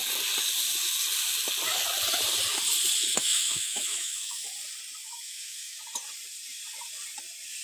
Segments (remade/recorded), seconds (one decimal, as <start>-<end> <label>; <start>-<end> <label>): 0.0-3.1 recorded; 3.1-4.4 remade; 4.4-5.0 recorded; 5.0-5.8 remade; 5.8-7.6 recorded